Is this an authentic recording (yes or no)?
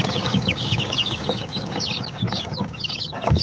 no